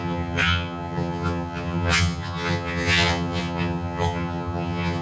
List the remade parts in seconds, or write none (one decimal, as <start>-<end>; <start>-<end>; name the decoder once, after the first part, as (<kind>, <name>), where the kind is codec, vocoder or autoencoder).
0.0-5.0 (vocoder, HiFi-GAN)